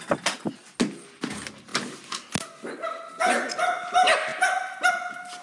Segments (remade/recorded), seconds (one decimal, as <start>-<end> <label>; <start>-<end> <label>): 0.0-5.4 recorded